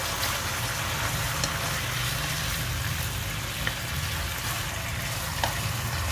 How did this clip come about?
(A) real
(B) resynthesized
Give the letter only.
A